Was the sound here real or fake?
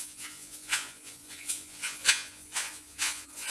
fake